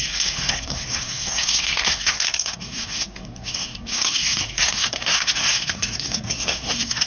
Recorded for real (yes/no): no